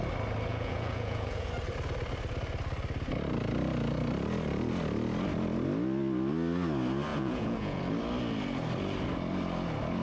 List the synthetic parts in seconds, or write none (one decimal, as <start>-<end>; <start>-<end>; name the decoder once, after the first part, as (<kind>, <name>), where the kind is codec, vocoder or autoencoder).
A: 0.5-1.5 (vocoder, Vocos); 7.1-7.8